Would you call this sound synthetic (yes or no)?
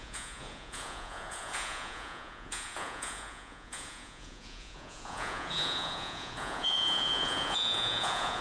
yes